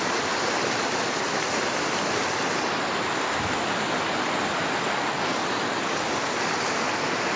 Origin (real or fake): real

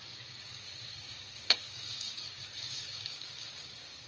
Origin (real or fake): fake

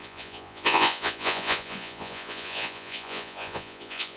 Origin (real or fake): fake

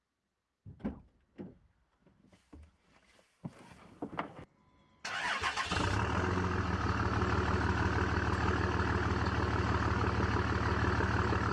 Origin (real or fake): real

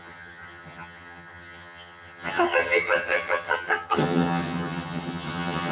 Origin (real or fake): fake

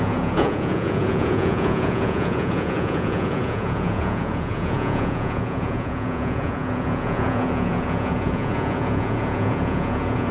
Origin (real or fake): fake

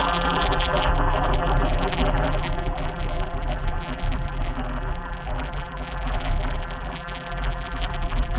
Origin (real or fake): fake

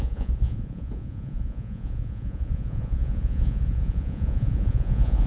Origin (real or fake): fake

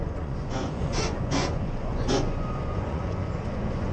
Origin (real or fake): fake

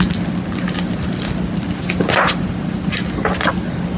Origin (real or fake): real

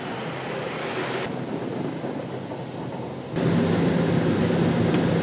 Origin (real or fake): real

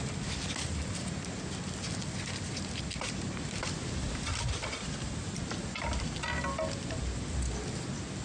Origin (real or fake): real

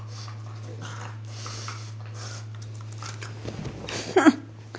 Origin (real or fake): real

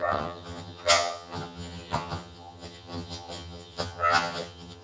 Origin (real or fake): fake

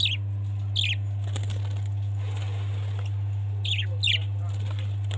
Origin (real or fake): real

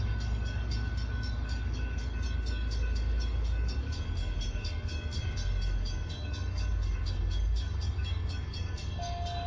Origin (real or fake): fake